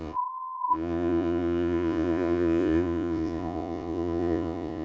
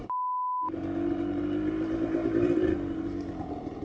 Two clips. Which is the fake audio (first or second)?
first